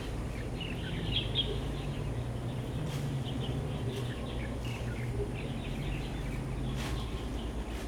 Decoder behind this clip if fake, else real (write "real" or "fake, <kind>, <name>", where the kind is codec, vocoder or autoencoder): real